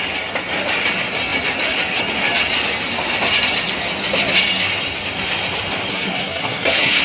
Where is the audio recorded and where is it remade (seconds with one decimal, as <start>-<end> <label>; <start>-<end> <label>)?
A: 0.0-5.9 recorded; 5.9-7.0 remade